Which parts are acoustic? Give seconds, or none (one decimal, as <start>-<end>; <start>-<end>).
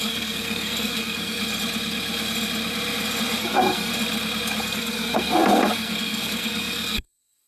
1.4-3.4; 3.9-4.6